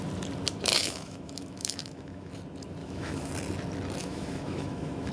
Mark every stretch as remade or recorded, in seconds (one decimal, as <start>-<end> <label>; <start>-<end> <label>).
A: 0.0-0.7 recorded; 0.7-2.3 remade; 2.3-2.8 recorded; 2.8-3.3 remade; 3.3-4.0 recorded; 4.0-5.1 remade